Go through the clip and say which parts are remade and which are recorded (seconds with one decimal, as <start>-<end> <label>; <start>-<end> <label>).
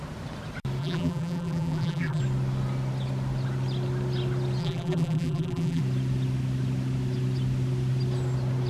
0.0-0.8 recorded; 0.8-2.2 remade; 2.2-4.6 recorded; 4.6-5.8 remade; 5.8-8.7 recorded